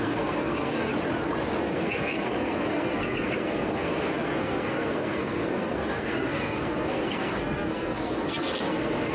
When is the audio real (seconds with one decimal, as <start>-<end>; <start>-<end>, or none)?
0.9-1.6